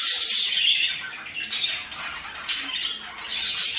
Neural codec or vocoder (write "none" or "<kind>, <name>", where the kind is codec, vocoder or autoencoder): none